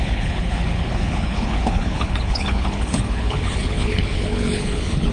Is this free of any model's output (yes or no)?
no